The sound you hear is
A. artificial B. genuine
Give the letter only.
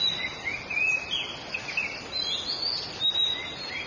B